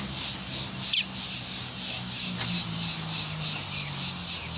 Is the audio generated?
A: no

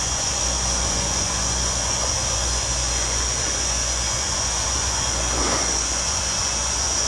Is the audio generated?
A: yes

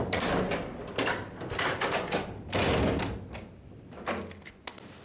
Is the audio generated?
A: no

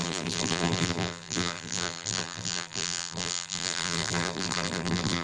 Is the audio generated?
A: yes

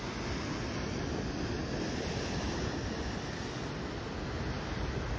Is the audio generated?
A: no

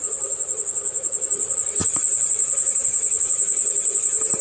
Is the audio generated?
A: yes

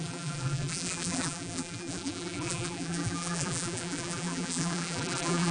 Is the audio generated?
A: yes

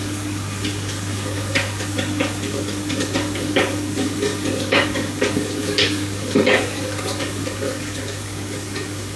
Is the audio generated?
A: yes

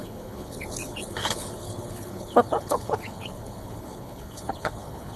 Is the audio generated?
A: yes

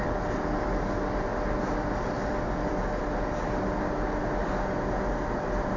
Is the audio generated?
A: no